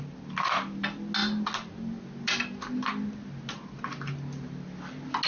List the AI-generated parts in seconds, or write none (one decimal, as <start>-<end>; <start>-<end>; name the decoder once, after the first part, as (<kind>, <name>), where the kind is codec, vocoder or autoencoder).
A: none